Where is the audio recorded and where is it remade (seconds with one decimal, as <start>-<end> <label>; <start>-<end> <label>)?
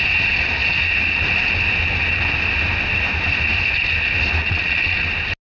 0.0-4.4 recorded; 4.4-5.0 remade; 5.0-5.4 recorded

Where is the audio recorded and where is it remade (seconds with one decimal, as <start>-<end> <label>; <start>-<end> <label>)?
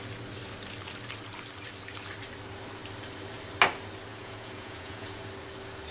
0.0-4.1 recorded; 4.1-5.2 remade; 5.2-5.9 recorded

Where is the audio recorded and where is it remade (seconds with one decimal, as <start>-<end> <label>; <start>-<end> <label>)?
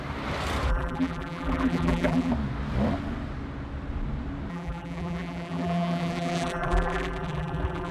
0.0-0.7 recorded; 0.7-2.3 remade; 2.3-4.5 recorded; 4.5-7.9 remade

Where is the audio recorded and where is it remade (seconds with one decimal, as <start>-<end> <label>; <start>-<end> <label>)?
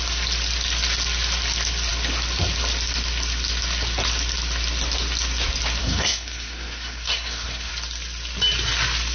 0.0-5.8 recorded; 5.8-7.7 remade; 7.7-9.1 recorded